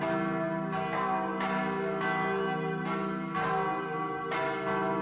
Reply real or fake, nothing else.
real